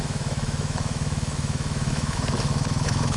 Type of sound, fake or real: fake